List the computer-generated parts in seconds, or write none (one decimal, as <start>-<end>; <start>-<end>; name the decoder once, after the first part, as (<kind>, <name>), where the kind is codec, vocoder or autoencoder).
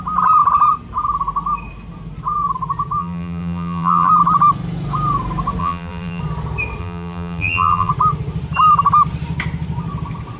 3.0-4.1 (vocoder, BigVGAN v2); 5.6-6.2; 6.8-7.9